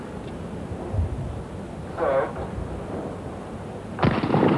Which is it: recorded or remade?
recorded